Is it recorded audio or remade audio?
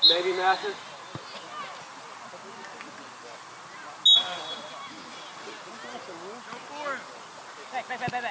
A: recorded